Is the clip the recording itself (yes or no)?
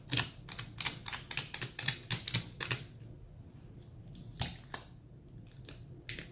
yes